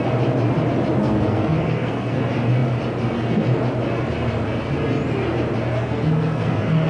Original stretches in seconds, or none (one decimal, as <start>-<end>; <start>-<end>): 0.0-1.0; 2.2-5.7